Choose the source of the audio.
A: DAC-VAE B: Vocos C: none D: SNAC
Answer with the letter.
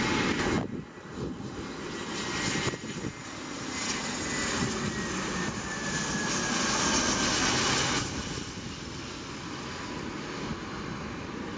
C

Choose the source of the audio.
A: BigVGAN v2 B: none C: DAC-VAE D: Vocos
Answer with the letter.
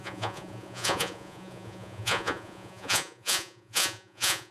D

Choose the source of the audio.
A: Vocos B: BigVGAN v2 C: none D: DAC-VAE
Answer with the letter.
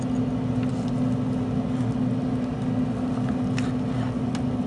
C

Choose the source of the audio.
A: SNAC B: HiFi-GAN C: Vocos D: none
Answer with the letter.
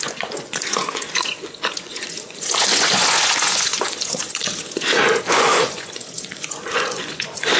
C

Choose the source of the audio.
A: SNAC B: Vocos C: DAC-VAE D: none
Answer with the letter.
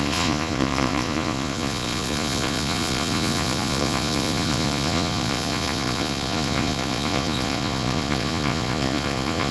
B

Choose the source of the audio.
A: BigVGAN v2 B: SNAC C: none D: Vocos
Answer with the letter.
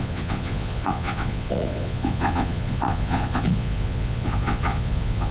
D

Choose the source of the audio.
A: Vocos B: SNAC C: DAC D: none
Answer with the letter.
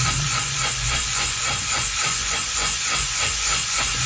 A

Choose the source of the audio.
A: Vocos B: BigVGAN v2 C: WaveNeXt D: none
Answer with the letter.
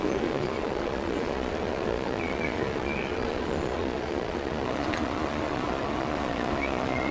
A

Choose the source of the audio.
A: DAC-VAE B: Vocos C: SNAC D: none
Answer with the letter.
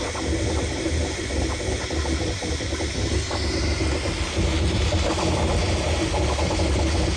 D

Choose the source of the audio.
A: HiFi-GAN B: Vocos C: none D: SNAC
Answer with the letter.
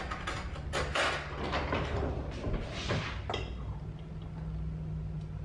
C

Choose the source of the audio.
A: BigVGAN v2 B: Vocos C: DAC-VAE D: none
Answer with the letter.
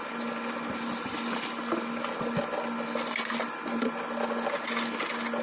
D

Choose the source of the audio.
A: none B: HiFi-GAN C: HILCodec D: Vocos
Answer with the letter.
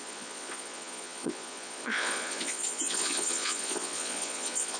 D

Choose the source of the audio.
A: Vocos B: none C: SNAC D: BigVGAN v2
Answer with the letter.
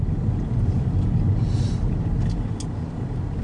B